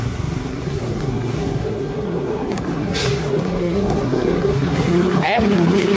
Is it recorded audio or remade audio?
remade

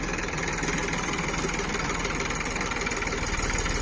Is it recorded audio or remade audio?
remade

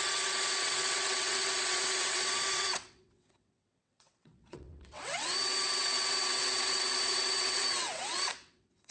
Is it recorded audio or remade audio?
remade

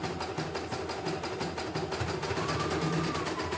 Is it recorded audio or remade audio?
recorded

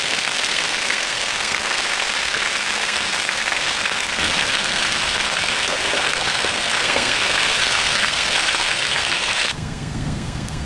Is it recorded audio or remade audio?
remade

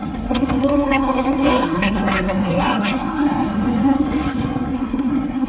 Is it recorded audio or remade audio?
remade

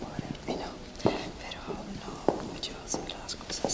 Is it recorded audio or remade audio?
recorded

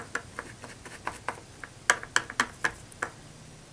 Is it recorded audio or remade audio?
recorded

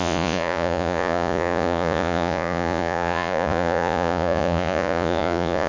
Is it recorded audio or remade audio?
remade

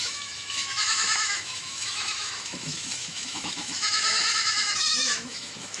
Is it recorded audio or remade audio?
remade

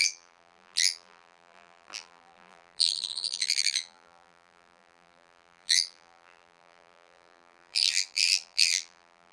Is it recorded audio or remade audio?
remade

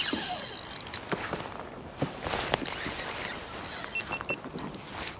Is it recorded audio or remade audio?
recorded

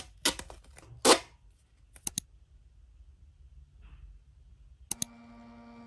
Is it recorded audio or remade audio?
recorded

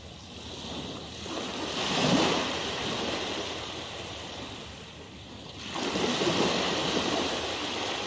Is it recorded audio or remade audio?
recorded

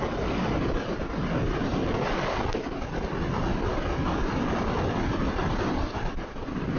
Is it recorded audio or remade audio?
recorded